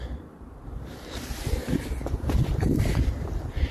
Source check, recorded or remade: remade